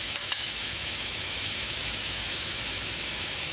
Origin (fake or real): fake